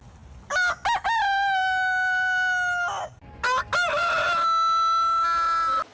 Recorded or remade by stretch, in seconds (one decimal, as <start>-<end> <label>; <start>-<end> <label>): 0.0-5.9 recorded